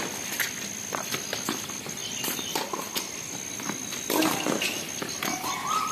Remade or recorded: recorded